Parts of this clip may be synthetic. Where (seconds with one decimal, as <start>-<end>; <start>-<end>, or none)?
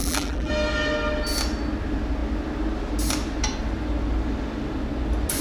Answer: 0.0-0.5